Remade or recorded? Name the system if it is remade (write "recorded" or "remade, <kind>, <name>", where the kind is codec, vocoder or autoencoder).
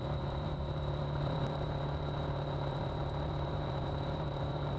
remade, vocoder, BigVGAN v2